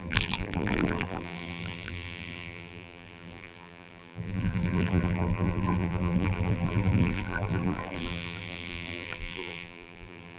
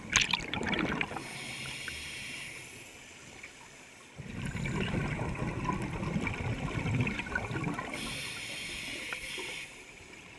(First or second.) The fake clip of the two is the first